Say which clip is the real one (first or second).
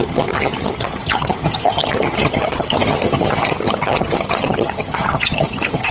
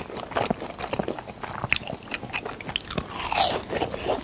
second